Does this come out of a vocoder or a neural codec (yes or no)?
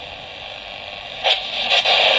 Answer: no